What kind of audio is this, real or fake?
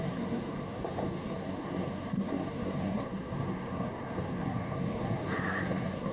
fake